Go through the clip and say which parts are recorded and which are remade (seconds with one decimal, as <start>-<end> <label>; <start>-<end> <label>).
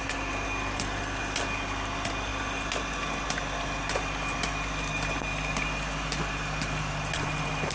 0.0-7.7 recorded